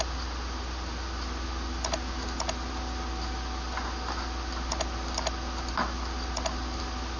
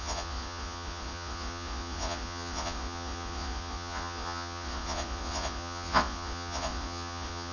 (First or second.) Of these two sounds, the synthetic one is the second